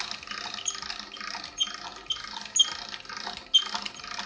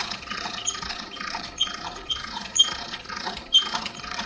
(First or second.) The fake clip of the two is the second